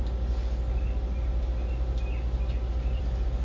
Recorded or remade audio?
recorded